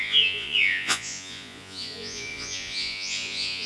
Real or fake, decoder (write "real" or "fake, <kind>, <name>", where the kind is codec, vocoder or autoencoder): fake, vocoder, Vocos